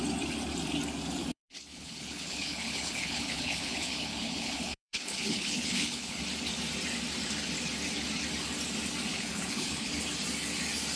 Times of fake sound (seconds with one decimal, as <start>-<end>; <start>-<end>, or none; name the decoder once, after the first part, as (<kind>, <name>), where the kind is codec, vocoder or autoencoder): 1.2-6.2 (codec, HILCodec); 9.1-9.9